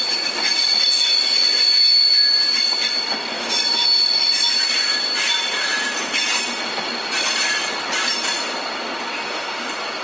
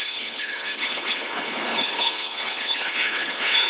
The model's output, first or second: second